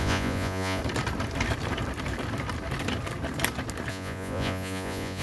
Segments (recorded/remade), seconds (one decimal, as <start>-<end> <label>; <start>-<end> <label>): 0.0-0.8 remade; 0.8-3.9 recorded; 3.9-5.2 remade